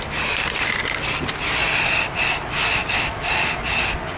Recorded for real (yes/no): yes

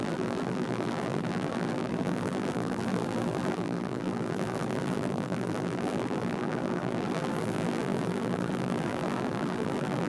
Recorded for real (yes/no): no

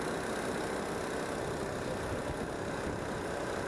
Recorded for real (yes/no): no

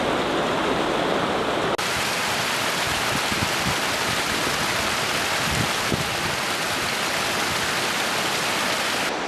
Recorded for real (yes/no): yes